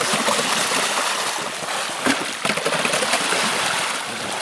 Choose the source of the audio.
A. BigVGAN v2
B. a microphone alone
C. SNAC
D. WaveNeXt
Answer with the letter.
B